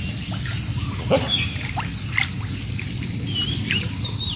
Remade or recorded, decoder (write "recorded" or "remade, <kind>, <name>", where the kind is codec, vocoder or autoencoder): recorded